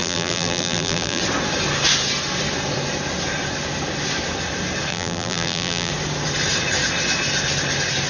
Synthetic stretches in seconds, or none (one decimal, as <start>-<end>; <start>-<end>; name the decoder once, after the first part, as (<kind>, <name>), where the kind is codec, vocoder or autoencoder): 0.0-1.2 (vocoder, BigVGAN v2); 4.9-5.9